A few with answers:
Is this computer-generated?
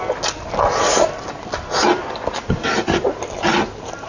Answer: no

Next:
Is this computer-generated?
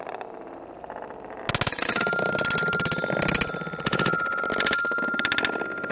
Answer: no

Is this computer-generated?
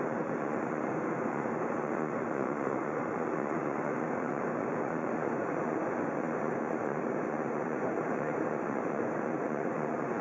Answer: yes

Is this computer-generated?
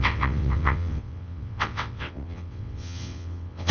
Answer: yes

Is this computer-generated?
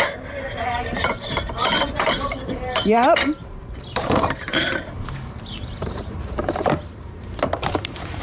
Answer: yes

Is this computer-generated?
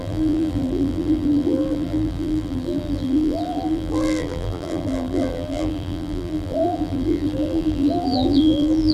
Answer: yes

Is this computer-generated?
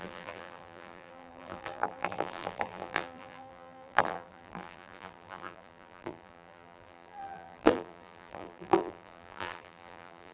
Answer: yes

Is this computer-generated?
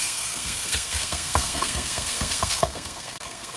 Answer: yes